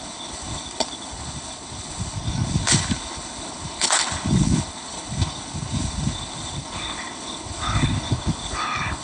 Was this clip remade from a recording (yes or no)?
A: yes